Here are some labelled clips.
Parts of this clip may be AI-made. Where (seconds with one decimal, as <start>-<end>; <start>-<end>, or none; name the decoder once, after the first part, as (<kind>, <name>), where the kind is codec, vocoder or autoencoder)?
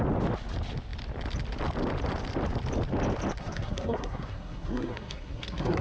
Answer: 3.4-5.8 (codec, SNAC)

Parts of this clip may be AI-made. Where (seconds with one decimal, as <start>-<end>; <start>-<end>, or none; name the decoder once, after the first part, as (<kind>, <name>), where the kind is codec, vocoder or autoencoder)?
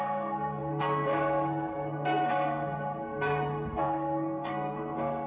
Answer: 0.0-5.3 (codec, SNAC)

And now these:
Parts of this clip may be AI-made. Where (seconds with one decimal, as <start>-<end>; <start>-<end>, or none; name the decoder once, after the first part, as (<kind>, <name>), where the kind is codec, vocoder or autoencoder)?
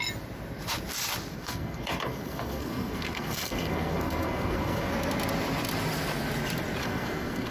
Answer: 1.3-4.9 (codec, SNAC); 6.8-7.5